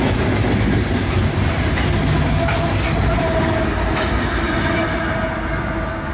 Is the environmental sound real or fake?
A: real